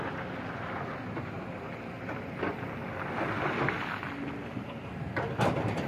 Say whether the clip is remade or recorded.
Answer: recorded